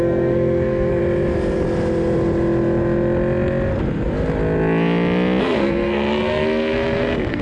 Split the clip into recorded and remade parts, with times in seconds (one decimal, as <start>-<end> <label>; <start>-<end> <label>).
0.0-1.0 remade; 1.0-5.4 recorded; 5.4-7.4 remade